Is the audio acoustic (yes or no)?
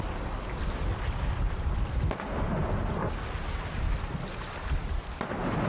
yes